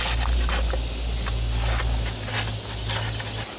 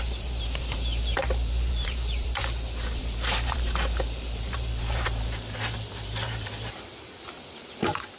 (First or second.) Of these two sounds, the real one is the first